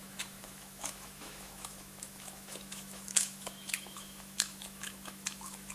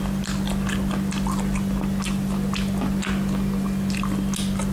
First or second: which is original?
second